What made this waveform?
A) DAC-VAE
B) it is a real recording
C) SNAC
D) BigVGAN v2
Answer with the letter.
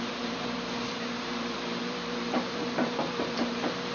D